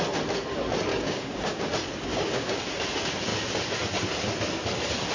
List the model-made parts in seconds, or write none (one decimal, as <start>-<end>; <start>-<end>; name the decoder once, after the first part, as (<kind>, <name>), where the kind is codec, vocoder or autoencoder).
0.9-1.7 (codec, DAC); 2.1-2.6